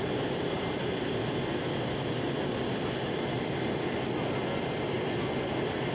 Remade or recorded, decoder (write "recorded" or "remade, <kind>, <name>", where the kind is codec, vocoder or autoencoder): recorded